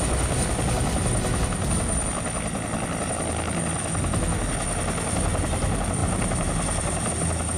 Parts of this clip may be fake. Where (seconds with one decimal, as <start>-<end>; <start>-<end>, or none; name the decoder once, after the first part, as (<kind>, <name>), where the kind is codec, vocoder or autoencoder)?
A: 6.0-7.1 (vocoder, BigVGAN v2)